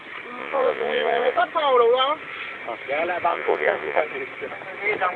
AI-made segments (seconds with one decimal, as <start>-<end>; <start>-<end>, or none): 0.4-1.4; 3.3-4.0